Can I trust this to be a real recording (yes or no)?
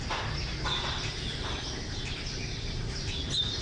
yes